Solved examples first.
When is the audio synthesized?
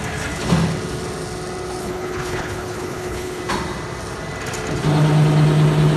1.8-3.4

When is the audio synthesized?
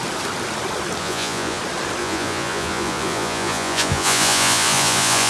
1.0-1.6; 2.0-5.3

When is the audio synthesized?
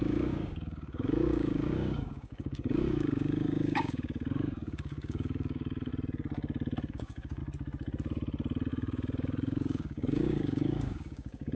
0.0-5.9; 6.9-7.4; 8.7-11.5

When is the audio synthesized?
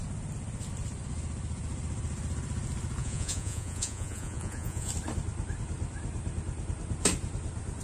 3.0-4.9